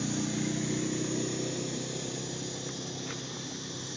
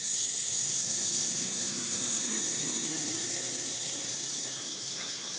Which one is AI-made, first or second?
second